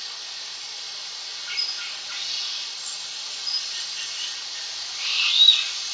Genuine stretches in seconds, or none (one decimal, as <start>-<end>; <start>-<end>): 0.0-5.9